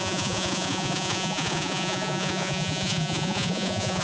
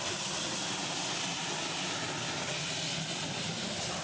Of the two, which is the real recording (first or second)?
second